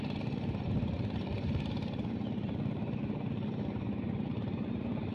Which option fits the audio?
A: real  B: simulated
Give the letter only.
B